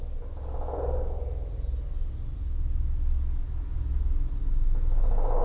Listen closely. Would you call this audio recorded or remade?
recorded